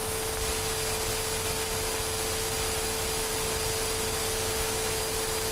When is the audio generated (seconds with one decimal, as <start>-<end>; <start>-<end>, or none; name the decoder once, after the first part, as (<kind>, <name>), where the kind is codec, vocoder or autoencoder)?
4.2-5.0 (autoencoder, DAC-VAE)